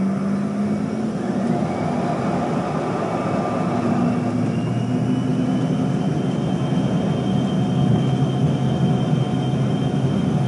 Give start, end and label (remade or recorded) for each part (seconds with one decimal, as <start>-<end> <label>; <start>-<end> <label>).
0.0-10.5 recorded